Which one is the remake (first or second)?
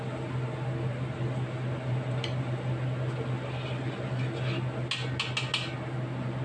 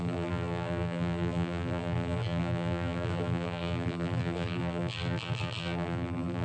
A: second